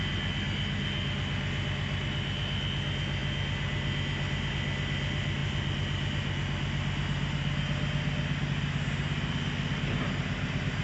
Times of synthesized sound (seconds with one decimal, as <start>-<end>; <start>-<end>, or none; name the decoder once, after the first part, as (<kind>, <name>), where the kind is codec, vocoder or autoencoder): none